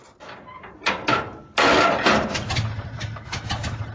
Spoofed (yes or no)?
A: no